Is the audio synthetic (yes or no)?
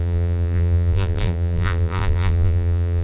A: yes